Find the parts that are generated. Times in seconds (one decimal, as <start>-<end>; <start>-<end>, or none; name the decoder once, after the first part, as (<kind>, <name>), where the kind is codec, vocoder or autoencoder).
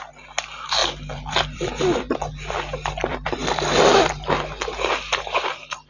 0.8-4.3 (vocoder, BigVGAN v2)